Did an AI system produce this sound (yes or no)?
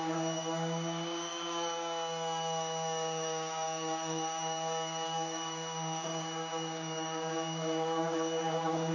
yes